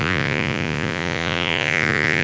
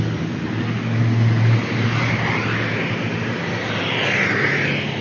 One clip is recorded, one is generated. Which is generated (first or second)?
first